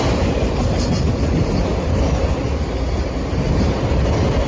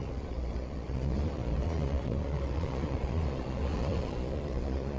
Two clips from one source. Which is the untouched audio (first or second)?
first